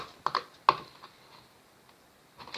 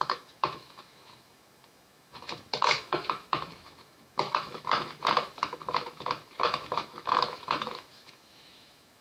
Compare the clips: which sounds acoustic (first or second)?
first